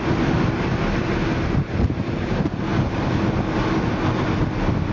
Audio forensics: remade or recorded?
recorded